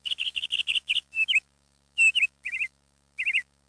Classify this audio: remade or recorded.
remade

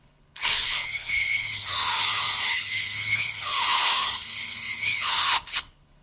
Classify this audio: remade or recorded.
remade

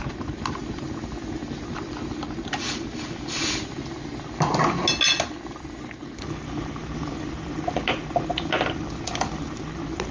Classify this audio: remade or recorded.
recorded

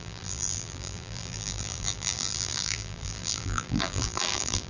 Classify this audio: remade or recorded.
remade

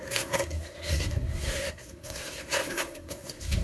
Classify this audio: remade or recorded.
remade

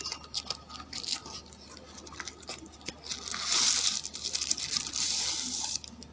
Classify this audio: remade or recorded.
recorded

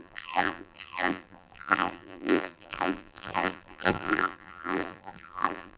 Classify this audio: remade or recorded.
remade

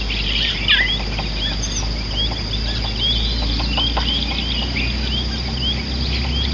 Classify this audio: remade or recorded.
recorded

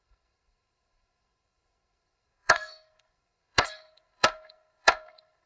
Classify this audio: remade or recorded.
remade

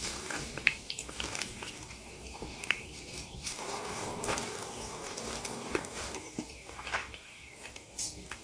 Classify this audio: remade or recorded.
remade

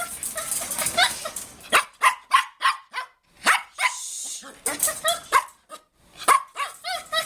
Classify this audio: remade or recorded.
recorded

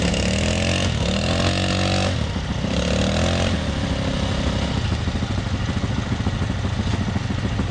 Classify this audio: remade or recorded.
recorded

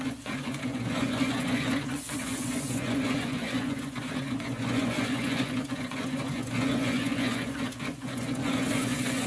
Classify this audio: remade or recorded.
remade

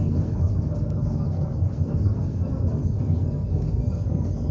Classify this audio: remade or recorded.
remade